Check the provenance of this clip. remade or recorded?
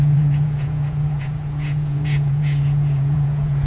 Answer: remade